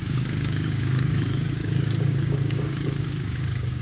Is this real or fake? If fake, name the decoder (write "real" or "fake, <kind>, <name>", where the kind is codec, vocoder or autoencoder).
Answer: fake, codec, DAC